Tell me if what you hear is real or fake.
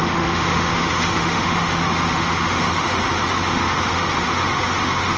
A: fake